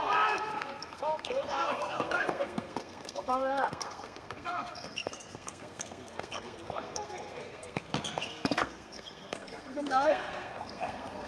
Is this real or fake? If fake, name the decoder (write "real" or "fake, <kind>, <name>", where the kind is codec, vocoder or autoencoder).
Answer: fake, codec, SNAC